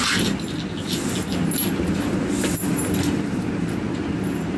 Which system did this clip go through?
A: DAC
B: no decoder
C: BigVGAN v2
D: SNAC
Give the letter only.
B